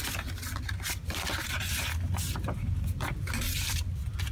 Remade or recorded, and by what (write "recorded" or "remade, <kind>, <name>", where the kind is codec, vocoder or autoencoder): recorded